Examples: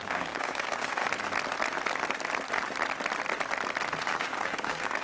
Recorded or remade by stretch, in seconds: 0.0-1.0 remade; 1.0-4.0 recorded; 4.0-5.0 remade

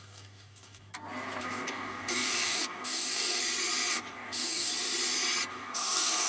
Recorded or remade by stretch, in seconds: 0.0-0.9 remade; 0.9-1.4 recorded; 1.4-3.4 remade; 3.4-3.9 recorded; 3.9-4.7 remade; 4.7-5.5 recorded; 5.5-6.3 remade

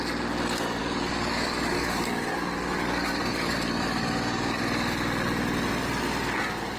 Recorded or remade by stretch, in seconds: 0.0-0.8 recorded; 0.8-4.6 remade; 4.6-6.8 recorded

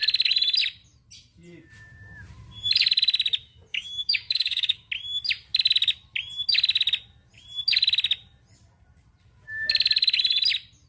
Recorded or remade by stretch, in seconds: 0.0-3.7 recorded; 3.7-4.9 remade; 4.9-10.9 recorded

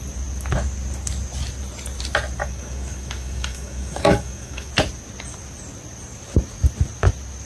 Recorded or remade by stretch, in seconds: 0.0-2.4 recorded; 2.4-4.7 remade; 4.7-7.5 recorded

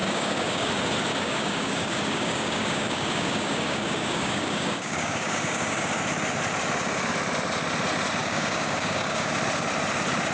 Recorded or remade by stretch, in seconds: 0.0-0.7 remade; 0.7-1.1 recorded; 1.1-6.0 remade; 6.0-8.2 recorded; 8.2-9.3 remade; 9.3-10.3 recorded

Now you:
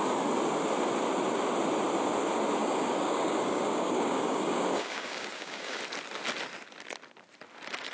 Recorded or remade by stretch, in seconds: 0.0-2.6 recorded; 2.6-5.8 remade; 5.8-7.9 recorded